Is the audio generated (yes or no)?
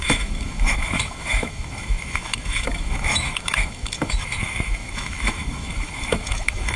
yes